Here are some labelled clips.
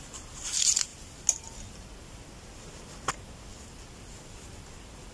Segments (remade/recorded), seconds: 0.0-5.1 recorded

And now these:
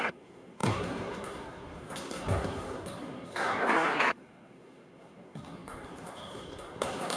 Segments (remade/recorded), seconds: 0.0-7.2 remade

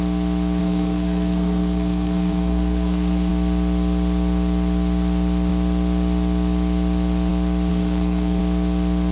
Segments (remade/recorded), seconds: 0.0-0.6 recorded; 0.6-3.3 remade; 3.3-7.7 recorded; 7.7-8.4 remade; 8.4-9.1 recorded

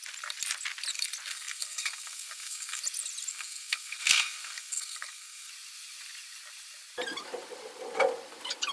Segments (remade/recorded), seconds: 0.0-1.3 recorded; 1.3-2.8 remade; 2.8-3.3 recorded; 3.3-5.5 remade; 5.5-8.7 recorded

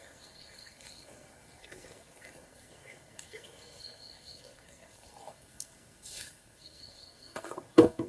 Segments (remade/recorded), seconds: 0.0-8.1 remade

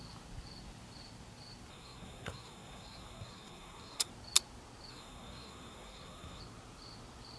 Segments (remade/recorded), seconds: 0.0-1.7 recorded; 1.7-4.1 remade; 4.1-4.9 recorded; 4.9-6.4 remade; 6.4-7.4 recorded

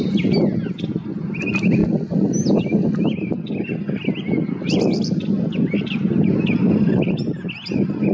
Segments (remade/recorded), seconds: 0.0-8.1 recorded

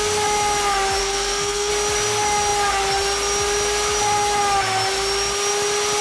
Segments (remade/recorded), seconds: 0.0-1.0 recorded; 1.0-1.7 remade; 1.7-6.0 recorded